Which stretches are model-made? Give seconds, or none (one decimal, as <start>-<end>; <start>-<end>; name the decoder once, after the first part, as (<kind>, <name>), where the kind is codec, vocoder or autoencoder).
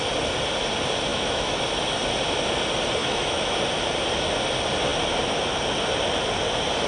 1.1-1.6 (autoencoder, DAC-VAE); 3.0-3.6